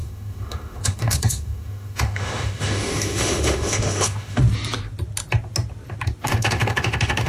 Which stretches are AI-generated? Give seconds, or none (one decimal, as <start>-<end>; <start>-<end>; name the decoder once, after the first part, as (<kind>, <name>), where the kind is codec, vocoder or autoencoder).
0.0-4.4 (autoencoder, DAC-VAE); 6.2-7.3